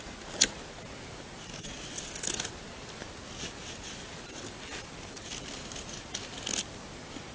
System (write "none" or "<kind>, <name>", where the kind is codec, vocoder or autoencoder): none